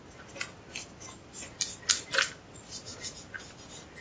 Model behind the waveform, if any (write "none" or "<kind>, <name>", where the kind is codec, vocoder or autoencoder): none